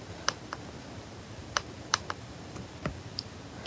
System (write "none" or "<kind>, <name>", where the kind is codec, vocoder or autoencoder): vocoder, BigVGAN v2